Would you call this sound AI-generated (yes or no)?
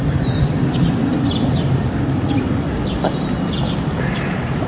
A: no